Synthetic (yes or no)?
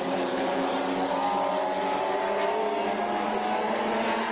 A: no